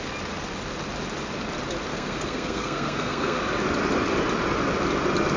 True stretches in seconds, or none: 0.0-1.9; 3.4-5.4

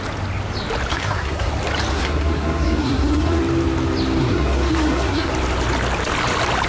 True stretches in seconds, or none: 0.0-0.9; 1.5-1.9; 3.4-4.2; 5.3-6.7

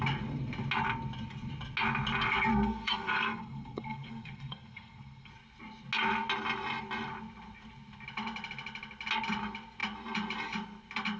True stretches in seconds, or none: 0.0-2.5; 5.3-11.2

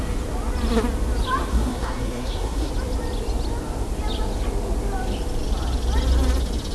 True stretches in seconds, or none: 0.0-1.5; 2.7-6.7